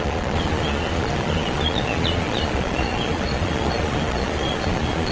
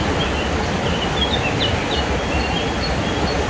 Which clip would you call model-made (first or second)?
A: first